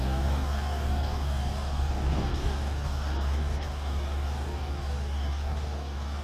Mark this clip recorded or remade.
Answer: remade